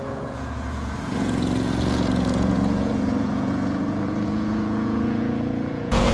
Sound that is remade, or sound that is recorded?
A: remade